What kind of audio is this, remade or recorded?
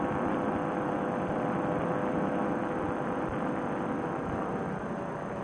recorded